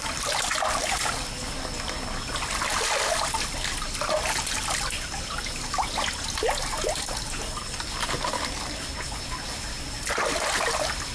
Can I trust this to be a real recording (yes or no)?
yes